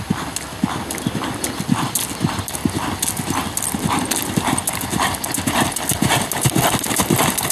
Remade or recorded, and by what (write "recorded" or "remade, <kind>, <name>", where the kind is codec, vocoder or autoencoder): recorded